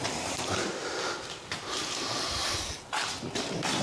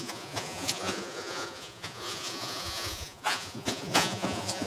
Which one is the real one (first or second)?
first